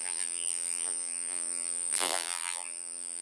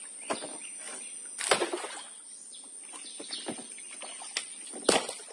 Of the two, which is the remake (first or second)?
first